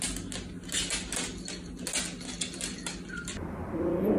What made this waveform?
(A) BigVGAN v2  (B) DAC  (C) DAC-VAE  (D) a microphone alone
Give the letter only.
D